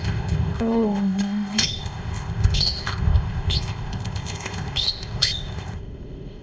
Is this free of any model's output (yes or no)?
no